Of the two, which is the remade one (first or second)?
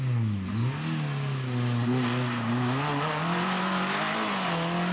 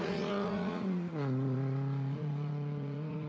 second